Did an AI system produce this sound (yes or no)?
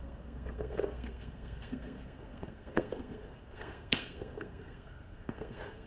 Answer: yes